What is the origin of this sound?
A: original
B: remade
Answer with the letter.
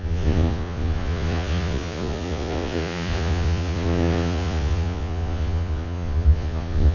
B